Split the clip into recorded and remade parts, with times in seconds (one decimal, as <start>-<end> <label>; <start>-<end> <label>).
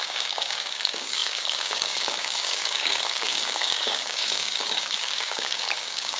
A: 0.0-6.2 remade